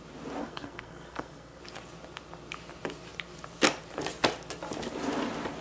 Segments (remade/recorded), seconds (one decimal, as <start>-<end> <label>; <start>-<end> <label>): 0.0-0.4 recorded; 0.4-1.6 remade; 1.6-5.6 recorded